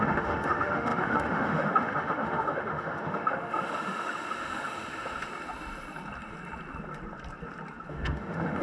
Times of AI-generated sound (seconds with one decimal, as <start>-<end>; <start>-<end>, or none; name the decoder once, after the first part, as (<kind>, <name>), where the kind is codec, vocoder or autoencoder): 0.0-5.3 (autoencoder, DAC-VAE); 7.9-8.6